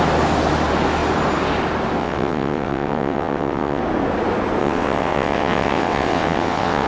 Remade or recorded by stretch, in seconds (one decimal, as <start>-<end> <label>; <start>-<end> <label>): 0.0-2.0 recorded; 2.0-3.8 remade; 3.8-4.6 recorded; 4.6-6.9 remade